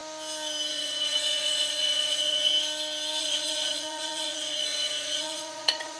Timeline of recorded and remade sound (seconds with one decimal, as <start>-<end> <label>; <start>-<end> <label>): 0.0-0.7 recorded; 0.7-2.5 remade; 2.5-3.2 recorded; 3.2-6.0 remade